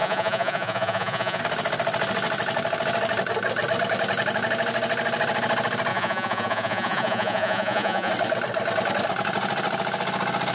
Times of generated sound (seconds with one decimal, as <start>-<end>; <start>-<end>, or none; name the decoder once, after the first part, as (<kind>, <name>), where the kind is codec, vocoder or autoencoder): 0.0-1.4 (vocoder, Vocos); 5.9-8.1